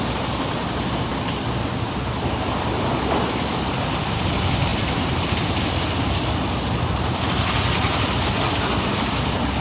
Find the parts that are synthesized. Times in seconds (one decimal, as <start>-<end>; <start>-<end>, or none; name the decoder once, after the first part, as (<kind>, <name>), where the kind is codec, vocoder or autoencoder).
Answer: none